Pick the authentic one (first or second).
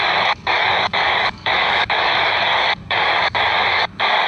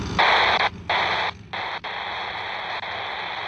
second